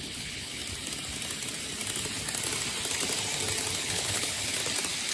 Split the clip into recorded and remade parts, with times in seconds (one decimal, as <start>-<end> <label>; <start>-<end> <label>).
0.0-0.6 remade; 0.6-3.7 recorded; 3.7-4.6 remade; 4.6-5.1 recorded